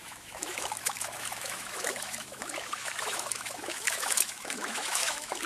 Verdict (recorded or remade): remade